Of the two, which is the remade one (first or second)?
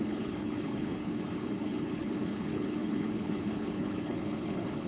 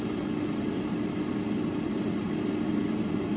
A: first